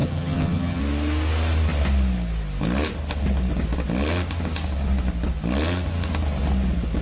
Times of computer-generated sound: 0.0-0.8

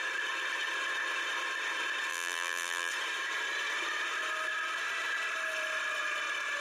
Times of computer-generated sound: 2.1-2.9

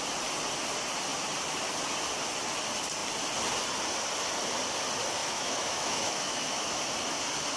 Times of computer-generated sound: 5.2-6.8

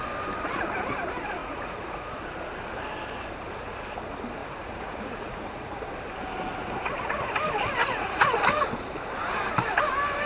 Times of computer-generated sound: 1.4-2.1; 4.4-5.8; 7.8-8.4

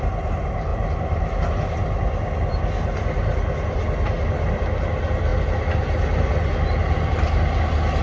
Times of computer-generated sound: none